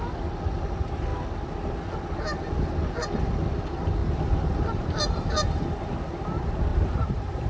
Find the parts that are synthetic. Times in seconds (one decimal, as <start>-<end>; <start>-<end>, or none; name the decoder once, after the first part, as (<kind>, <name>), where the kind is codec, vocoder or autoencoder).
4.0-5.6 (vocoder, BigVGAN v2); 6.7-7.5